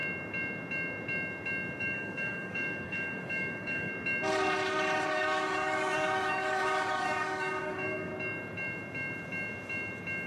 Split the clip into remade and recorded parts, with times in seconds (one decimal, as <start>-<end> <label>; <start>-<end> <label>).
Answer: 0.0-1.8 recorded; 1.8-3.9 remade; 3.9-5.1 recorded; 5.1-8.1 remade; 8.1-10.3 recorded